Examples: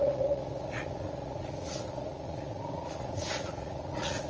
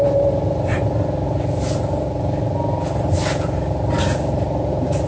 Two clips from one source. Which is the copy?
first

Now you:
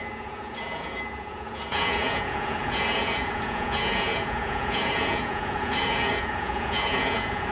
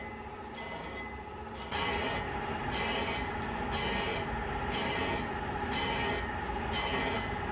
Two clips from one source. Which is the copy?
first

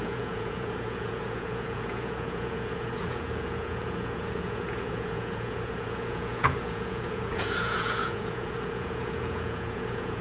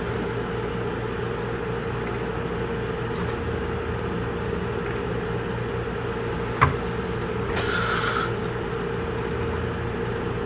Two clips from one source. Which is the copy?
first